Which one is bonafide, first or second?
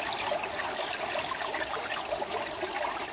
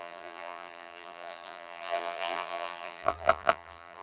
first